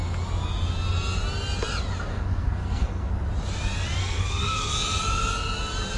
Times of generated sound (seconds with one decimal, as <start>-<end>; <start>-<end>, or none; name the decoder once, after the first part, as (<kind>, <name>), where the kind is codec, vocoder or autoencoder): 2.1-3.1 (codec, SNAC); 4.0-4.7